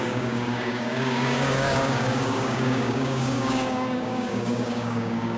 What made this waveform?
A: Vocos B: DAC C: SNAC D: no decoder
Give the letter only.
B